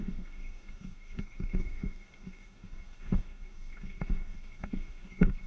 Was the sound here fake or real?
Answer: fake